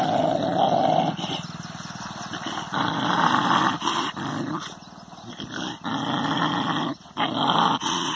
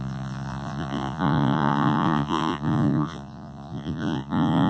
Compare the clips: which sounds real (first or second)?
first